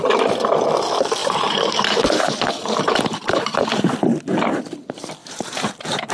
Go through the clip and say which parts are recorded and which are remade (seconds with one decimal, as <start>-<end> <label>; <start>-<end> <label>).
0.0-1.2 recorded; 1.2-3.7 remade; 3.7-5.2 recorded; 5.2-6.1 remade